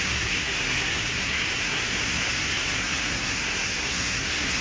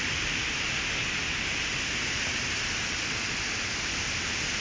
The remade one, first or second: first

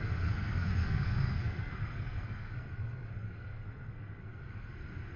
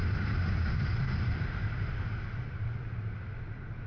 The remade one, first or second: first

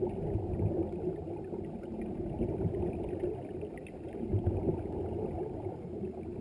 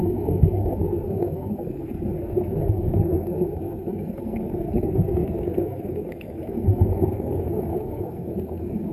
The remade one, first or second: second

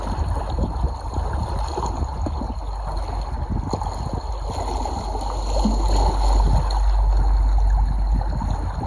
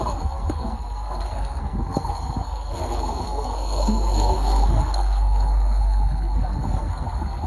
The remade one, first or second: second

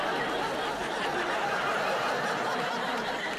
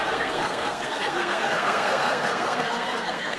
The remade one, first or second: second